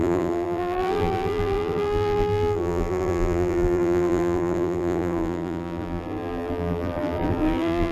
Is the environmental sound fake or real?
fake